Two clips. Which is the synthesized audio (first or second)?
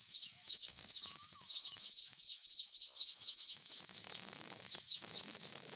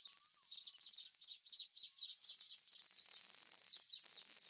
first